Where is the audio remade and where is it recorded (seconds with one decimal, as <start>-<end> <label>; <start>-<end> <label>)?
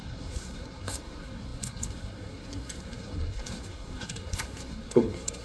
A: 0.0-5.4 remade